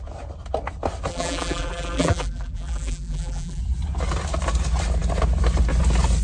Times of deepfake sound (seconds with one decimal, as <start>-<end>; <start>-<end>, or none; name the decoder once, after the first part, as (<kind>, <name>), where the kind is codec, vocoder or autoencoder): 1.1-3.6 (vocoder, BigVGAN v2)